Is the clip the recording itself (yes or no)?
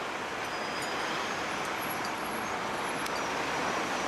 yes